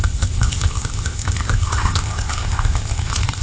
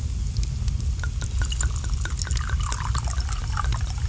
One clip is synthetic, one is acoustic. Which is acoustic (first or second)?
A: second